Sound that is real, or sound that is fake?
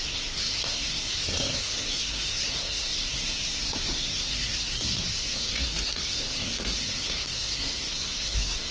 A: fake